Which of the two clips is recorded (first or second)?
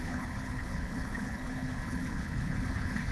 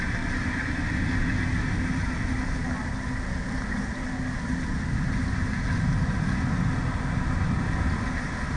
second